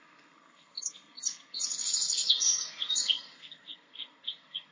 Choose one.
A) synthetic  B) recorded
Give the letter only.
A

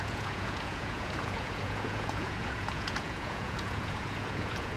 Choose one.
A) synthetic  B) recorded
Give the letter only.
A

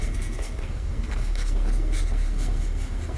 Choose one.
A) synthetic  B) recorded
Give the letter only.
A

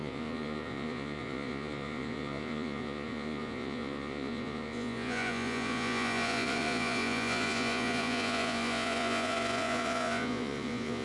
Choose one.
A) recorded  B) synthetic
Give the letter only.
B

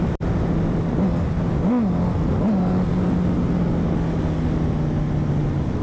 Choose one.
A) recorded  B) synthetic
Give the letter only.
A